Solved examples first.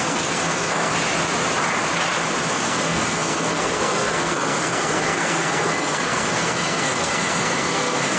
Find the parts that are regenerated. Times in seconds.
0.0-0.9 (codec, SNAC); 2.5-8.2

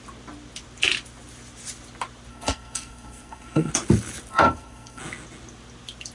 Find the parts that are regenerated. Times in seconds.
2.3-3.7 (codec, SNAC); 4.3-5.0

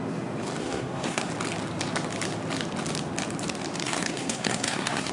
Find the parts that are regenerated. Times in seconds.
0.6-1.3 (codec, SNAC); 3.8-5.1

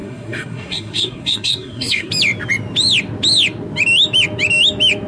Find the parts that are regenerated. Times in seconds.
0.0-2.1 (codec, SNAC)

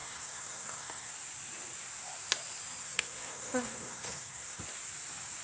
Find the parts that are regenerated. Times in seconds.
0.0-1.1 (codec, SNAC); 2.8-4.6

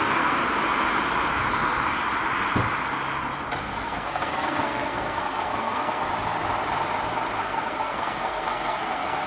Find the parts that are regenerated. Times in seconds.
0.0-0.4 (codec, SNAC); 3.6-6.1; 7.4-9.3

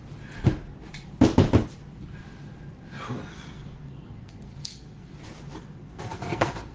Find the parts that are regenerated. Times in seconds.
3.3-5.1 (codec, SNAC); 5.6-6.7